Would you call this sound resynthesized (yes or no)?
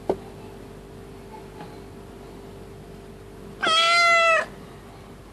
no